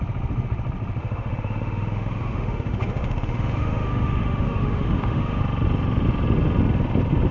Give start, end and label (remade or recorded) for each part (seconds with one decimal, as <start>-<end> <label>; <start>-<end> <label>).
0.0-1.0 recorded; 1.0-5.4 remade; 5.4-7.3 recorded